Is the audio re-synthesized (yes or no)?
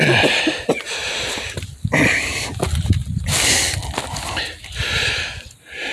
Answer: no